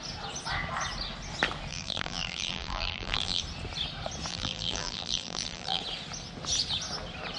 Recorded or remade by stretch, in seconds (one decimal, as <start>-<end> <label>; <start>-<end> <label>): 0.0-1.7 recorded; 1.7-3.4 remade; 3.4-4.3 recorded; 4.3-5.8 remade; 5.8-7.4 recorded